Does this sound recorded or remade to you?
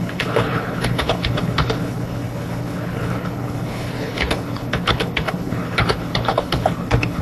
remade